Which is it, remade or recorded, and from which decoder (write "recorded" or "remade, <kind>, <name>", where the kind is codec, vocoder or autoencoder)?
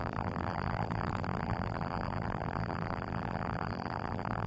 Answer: remade, vocoder, BigVGAN v2